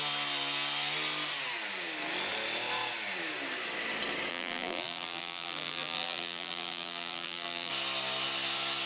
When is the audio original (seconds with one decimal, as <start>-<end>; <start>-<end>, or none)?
0.0-4.3; 7.7-8.9